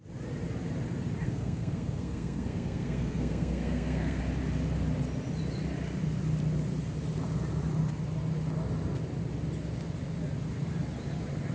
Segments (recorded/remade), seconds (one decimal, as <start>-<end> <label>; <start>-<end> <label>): 0.0-1.2 recorded; 1.2-4.2 remade; 4.2-11.5 recorded